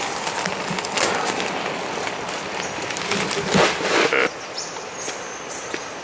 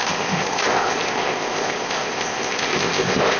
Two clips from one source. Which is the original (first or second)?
first